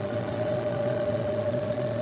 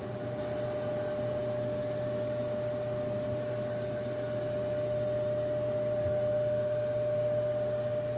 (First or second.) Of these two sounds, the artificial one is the first